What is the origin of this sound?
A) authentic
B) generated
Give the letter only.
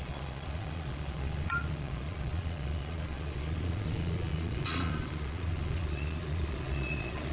B